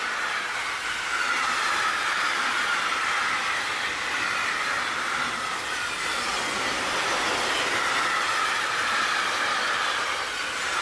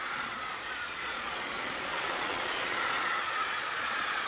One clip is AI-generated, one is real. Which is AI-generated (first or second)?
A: second